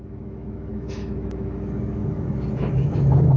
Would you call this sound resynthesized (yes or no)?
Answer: yes